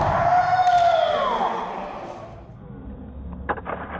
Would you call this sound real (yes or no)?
yes